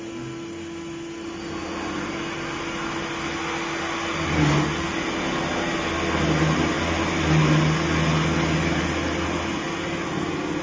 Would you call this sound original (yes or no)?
yes